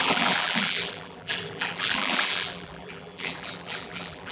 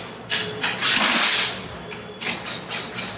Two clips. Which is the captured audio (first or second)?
second